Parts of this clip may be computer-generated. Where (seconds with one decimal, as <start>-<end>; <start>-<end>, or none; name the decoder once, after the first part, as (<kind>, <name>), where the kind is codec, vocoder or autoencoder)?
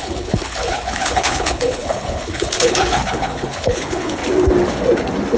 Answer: 0.0-4.2 (codec, HILCodec)